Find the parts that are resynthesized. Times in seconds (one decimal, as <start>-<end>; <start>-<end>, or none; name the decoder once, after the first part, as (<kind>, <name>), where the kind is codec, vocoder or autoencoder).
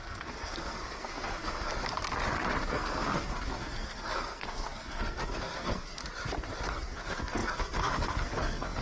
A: 0.0-1.7 (codec, SNAC); 2.7-6.0; 6.7-8.8